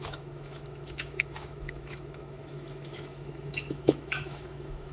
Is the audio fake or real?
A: fake